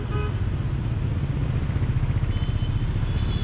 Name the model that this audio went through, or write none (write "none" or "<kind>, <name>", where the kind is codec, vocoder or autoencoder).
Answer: none